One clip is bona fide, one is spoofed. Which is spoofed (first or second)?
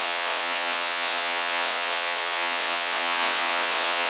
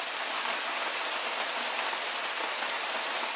first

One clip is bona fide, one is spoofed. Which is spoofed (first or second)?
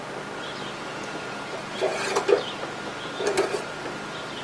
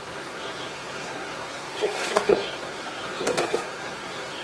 second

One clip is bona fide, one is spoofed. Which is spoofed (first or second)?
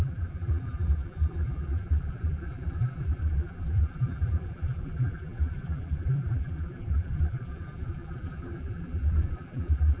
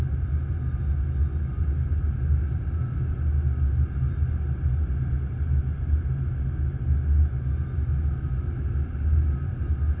first